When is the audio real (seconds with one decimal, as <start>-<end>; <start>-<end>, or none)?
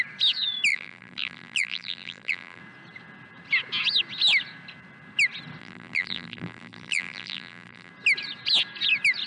0.0-0.7; 2.6-5.6; 7.9-9.3